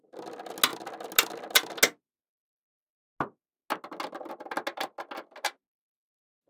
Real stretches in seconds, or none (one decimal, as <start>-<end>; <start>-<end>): 0.0-6.5